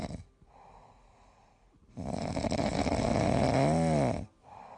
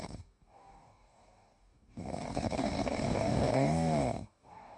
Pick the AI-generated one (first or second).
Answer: second